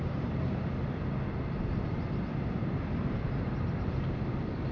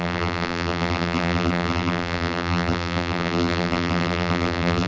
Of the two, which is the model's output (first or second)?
second